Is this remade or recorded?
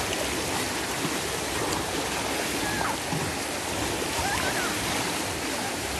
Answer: recorded